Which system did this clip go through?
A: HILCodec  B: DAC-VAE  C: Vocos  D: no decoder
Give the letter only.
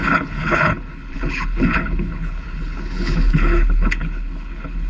A